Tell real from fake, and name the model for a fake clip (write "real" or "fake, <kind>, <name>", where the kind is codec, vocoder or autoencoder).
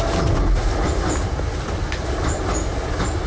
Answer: real